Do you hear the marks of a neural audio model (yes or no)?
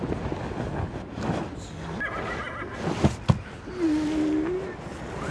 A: no